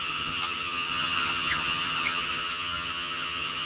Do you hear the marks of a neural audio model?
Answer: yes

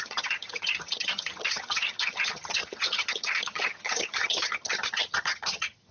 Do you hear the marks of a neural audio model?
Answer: yes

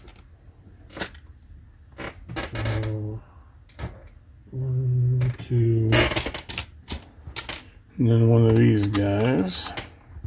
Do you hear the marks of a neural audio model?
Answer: no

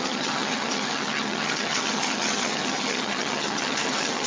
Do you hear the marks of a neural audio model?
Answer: yes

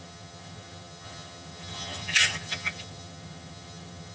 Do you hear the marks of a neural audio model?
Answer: yes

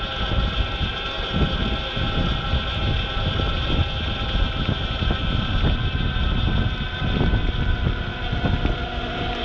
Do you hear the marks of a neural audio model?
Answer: no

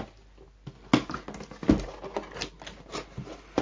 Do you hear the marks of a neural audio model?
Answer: no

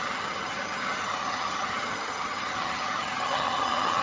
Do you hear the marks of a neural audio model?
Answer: yes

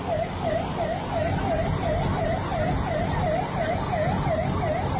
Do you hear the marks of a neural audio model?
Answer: no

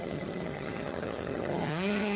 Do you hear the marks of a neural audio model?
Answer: yes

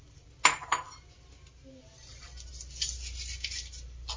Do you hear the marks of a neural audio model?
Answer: no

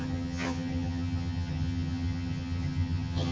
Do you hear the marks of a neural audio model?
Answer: yes